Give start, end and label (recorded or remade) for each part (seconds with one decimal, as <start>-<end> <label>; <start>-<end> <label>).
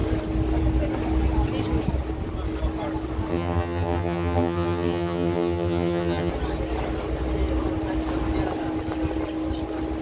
0.0-3.3 recorded; 3.3-6.3 remade; 6.3-10.0 recorded